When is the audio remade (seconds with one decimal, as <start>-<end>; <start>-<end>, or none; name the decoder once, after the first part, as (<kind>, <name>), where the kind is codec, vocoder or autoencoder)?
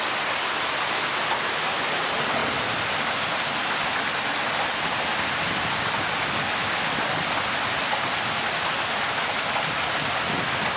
none